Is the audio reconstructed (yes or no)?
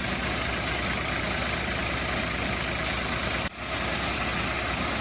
no